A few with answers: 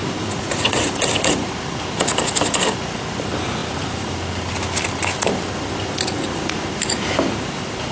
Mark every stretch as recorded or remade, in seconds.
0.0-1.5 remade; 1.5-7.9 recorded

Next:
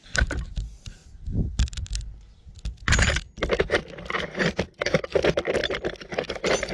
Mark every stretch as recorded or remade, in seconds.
0.0-6.7 recorded

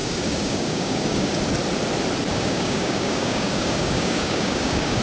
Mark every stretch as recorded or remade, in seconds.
0.0-1.4 remade; 1.4-2.3 recorded; 2.3-5.0 remade

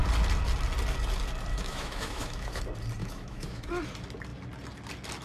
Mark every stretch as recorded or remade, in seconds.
0.0-1.5 recorded; 1.5-2.6 remade; 2.6-3.0 recorded; 3.0-3.7 remade; 3.7-5.2 recorded